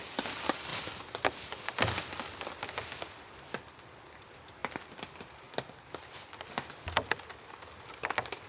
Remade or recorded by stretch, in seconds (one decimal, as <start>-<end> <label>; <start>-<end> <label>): 0.0-8.5 recorded